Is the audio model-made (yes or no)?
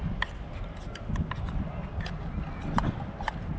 no